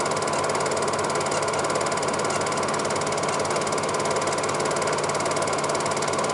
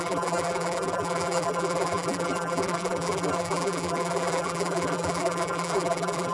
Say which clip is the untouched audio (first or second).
first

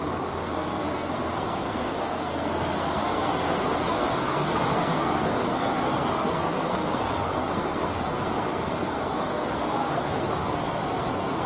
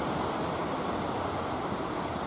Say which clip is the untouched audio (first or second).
second